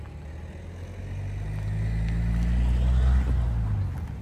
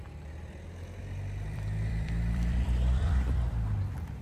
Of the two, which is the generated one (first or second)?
second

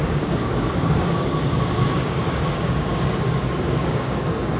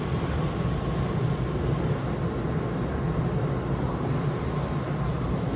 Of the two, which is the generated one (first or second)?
first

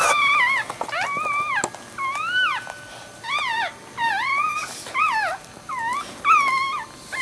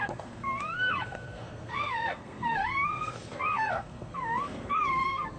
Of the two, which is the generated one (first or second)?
second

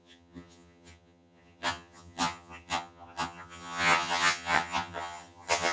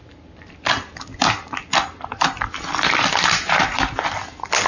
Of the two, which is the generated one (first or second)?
first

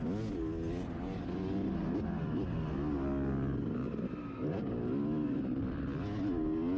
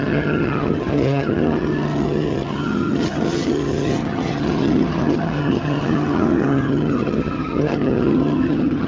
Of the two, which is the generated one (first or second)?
second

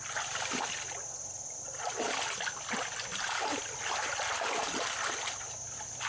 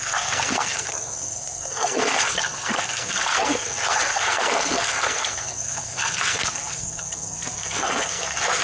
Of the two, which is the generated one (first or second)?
second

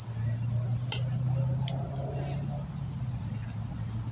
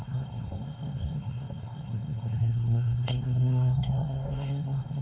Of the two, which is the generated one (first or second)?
second